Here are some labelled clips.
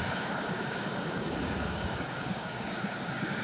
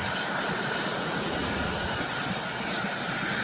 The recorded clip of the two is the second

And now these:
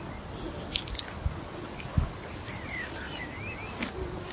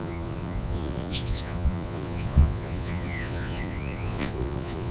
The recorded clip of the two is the first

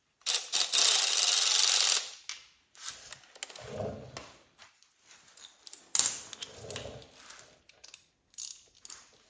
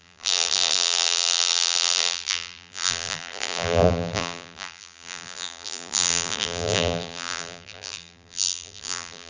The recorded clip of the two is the first